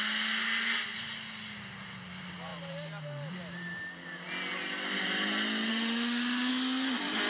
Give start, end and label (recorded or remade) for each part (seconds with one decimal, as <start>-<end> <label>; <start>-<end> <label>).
0.0-5.7 recorded; 5.7-6.5 remade; 6.5-7.3 recorded